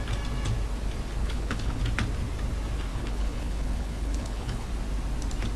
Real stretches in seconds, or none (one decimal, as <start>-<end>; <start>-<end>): 0.0-1.2; 1.8-2.9; 4.7-5.6

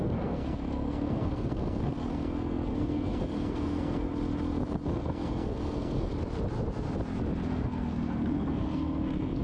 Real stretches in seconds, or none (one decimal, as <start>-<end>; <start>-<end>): 4.1-4.9; 6.1-7.5

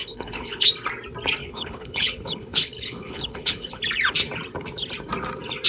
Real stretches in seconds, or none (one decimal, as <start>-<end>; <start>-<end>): 0.7-1.4; 3.8-5.7

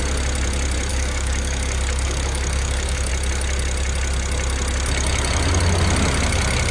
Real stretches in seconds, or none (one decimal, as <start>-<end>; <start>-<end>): 0.0-0.9; 3.1-6.7

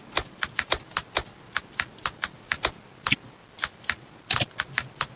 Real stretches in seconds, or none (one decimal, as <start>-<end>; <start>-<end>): 0.0-5.2

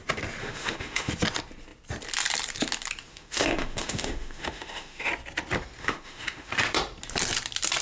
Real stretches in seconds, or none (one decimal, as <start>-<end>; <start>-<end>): 0.0-0.4; 1.1-3.1; 5.1-5.8; 6.5-7.8

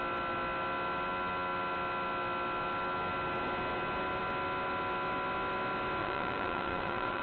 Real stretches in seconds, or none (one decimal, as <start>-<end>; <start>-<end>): 0.0-6.0

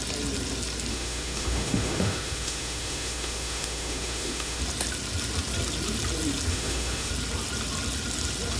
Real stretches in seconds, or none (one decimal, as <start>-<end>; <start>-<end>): 0.0-0.9; 4.6-6.5; 7.1-8.6